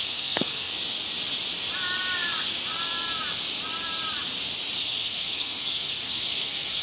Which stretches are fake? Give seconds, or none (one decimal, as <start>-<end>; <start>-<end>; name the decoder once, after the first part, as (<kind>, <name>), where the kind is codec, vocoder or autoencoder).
0.0-0.7 (codec, SNAC); 4.8-6.8